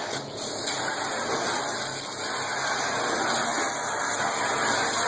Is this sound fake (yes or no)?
no